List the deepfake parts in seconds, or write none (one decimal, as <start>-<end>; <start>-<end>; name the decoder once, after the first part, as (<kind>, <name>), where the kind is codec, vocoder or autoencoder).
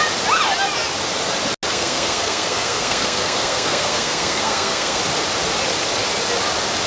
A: 1.7-5.0 (codec, SNAC)